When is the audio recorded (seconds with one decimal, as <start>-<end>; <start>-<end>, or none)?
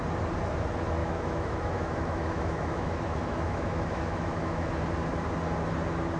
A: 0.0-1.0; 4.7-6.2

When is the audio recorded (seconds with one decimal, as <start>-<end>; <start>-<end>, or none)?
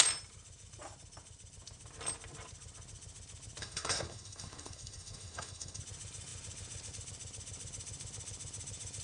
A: 0.0-3.6; 5.8-9.0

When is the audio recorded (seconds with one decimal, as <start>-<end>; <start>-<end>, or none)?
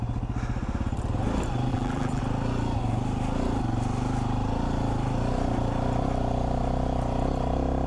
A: 0.0-1.7; 2.2-7.9